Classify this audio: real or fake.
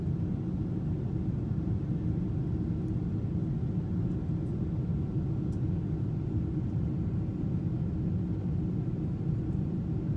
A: real